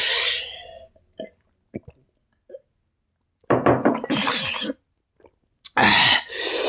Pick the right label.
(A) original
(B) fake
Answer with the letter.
A